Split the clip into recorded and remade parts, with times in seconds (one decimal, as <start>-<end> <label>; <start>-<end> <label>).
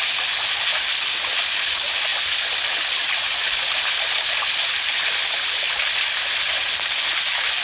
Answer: 0.0-2.1 recorded; 2.1-6.7 remade; 6.7-7.6 recorded